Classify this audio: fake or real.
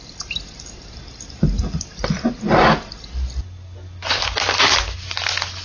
real